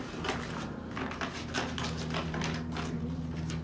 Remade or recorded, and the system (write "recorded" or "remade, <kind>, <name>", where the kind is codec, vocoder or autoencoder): recorded